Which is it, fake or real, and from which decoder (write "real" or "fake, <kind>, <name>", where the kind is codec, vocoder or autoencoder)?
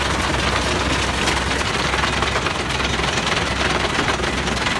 real